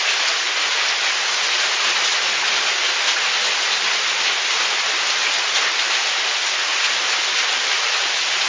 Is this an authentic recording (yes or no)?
yes